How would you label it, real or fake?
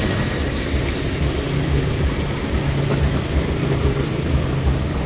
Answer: real